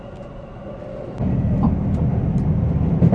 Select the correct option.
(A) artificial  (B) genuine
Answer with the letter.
B